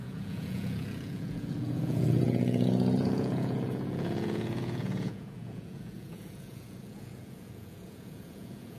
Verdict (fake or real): fake